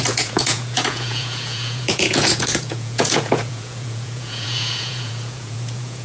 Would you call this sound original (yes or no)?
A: no